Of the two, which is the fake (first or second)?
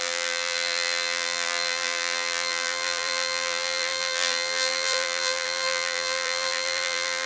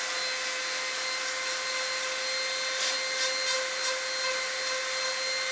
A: first